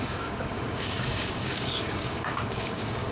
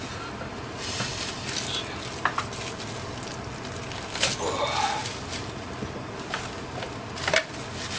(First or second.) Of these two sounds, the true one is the second